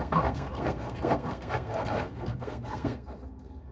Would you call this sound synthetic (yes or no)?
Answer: yes